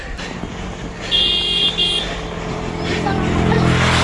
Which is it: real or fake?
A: real